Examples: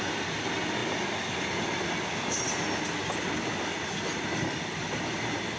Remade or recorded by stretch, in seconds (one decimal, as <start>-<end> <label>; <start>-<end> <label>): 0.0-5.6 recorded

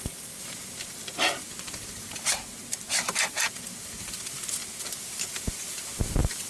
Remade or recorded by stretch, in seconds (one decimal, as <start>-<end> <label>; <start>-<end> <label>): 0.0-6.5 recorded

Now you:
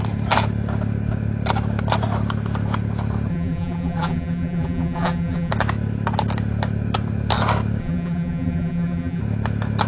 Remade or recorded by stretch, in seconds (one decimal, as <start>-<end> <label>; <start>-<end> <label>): 0.0-3.3 recorded; 3.3-5.5 remade; 5.5-7.8 recorded; 7.8-9.2 remade; 9.2-9.9 recorded